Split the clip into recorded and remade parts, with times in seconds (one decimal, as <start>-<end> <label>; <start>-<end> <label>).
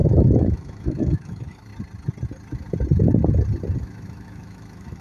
0.0-1.7 remade; 1.7-3.8 recorded; 3.8-5.0 remade